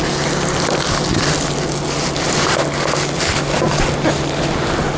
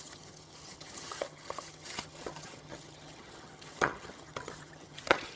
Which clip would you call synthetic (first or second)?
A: second